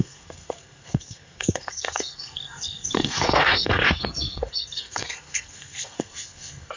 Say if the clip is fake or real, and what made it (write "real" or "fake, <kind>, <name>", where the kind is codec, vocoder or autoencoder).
fake, codec, SNAC